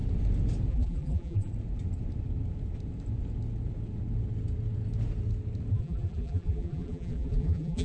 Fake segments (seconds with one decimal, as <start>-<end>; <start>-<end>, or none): 0.7-1.5; 5.7-7.8